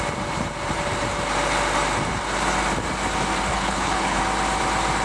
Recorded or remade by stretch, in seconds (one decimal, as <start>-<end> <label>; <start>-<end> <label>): 0.0-3.5 recorded; 3.5-4.2 remade; 4.2-5.0 recorded